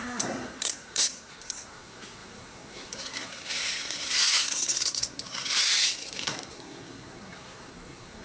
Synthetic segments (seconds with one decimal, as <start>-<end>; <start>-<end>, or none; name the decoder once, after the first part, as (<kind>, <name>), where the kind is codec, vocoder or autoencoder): 0.0-8.2 (codec, SNAC)